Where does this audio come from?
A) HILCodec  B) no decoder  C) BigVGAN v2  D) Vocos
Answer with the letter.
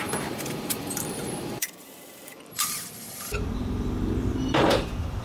C